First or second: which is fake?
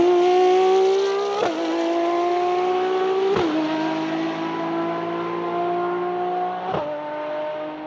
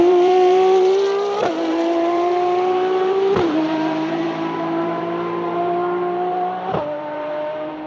second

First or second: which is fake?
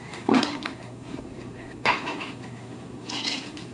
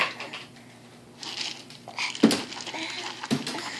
first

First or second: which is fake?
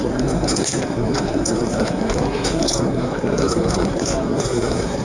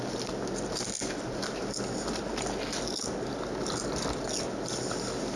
first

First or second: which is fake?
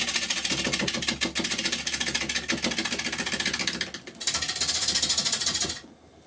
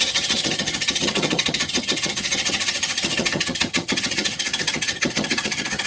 second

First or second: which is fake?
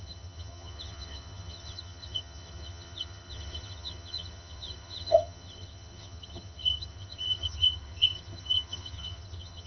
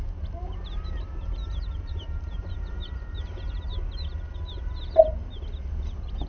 first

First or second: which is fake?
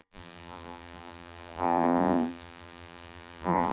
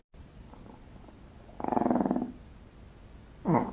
first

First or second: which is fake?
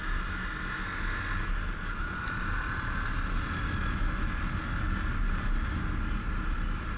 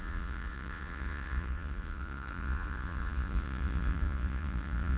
second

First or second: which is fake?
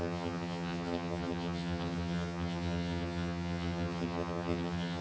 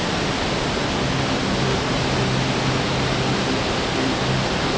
first